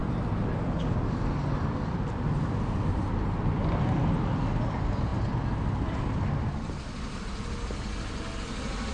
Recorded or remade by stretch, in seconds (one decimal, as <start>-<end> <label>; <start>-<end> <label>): 0.0-8.9 recorded